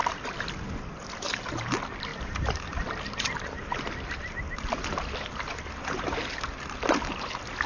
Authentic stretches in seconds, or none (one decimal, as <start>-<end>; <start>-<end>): 0.0-7.7